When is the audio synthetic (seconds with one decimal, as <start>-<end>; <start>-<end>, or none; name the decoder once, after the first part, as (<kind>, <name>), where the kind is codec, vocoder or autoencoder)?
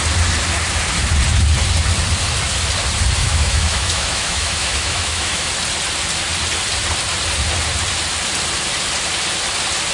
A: 3.2-5.5 (autoencoder, DAC-VAE)